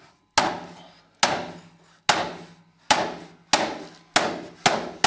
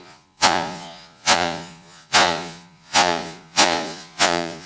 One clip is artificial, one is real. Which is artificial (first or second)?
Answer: second